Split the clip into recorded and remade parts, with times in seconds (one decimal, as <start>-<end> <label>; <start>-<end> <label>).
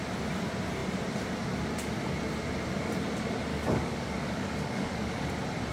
0.0-3.5 recorded; 3.5-5.3 remade; 5.3-5.7 recorded